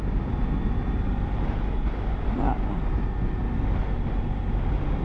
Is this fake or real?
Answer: real